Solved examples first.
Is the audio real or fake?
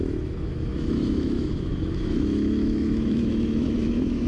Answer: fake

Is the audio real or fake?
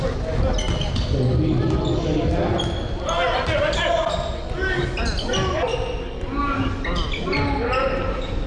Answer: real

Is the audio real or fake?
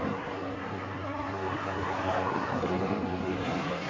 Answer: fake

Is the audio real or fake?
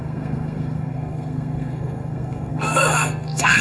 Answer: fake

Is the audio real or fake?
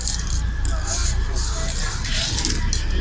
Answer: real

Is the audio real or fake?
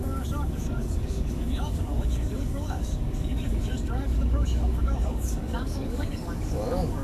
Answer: fake